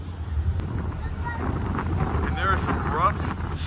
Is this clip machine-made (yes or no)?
no